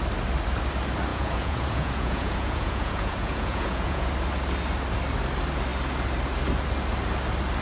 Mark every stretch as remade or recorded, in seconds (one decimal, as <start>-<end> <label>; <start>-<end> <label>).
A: 0.0-1.1 recorded; 1.1-4.1 remade; 4.1-7.6 recorded